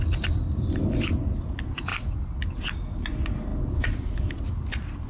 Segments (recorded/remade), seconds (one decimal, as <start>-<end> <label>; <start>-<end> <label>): 0.0-1.9 recorded; 1.9-2.4 remade; 2.4-5.1 recorded